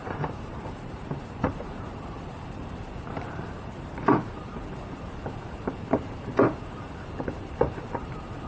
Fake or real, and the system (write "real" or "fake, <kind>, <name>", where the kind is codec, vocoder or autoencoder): fake, vocoder, BigVGAN v2